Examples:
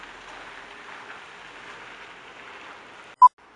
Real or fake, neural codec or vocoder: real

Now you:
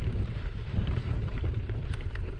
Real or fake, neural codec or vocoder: fake, vocoder, BigVGAN v2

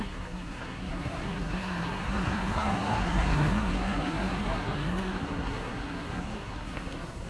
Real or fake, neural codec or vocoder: fake, codec, SNAC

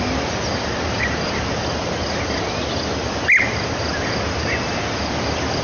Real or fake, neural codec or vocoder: real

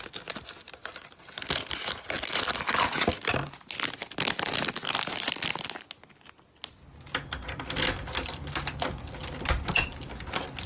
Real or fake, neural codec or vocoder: real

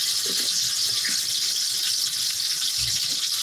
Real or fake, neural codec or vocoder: real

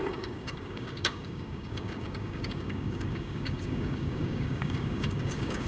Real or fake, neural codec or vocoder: fake, codec, DAC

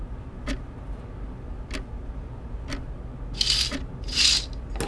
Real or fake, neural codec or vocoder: real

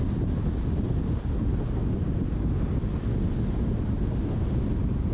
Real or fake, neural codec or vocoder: real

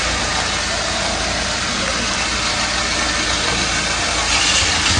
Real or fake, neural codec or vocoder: real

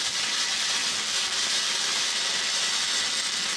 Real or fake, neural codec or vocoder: real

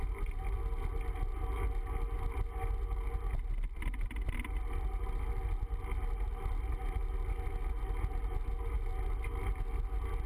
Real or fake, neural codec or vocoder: real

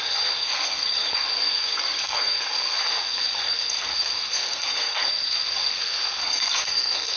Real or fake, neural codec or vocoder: fake, codec, SNAC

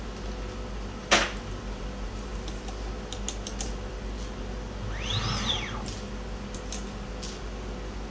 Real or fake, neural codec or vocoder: real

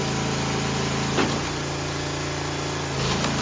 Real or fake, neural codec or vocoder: real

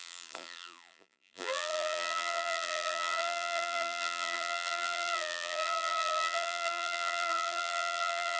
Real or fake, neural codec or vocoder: fake, vocoder, BigVGAN v2